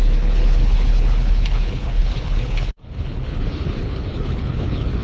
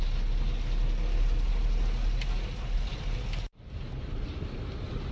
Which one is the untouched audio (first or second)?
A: second